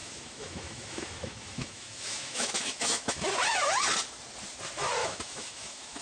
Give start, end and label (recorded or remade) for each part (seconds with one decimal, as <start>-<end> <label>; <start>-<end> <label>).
0.0-3.3 remade; 3.3-5.0 recorded; 5.0-6.0 remade